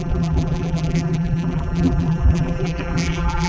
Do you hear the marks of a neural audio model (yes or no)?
yes